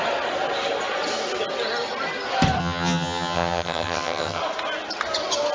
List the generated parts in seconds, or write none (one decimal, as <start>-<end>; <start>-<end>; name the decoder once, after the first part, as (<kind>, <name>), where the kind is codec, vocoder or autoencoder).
2.6-4.4 (vocoder, HiFi-GAN)